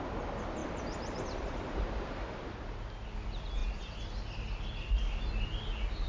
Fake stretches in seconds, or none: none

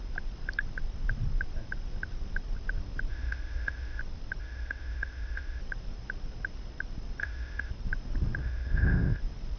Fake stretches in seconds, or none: 3.1-4.0 (codec, ZipCodec); 4.4-5.6; 7.2-7.7; 8.4-9.2

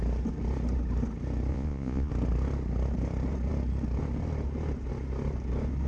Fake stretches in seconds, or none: 1.5-2.1 (vocoder, Vocos)

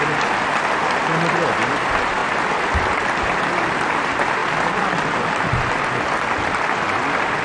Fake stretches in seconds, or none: none

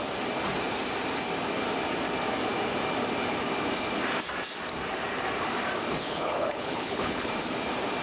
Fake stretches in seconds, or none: 6.0-7.3 (codec, HILCodec)

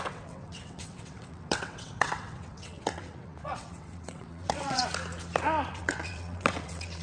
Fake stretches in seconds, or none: 0.0-4.8 (vocoder, WaveNeXt); 5.7-7.0

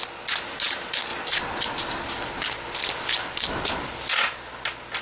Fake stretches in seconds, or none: 1.1-4.1 (vocoder, BigVGAN v2)